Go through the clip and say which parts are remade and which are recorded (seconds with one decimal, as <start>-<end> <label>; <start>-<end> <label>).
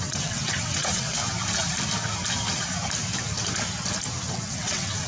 0.0-1.2 remade; 1.2-4.3 recorded; 4.3-5.1 remade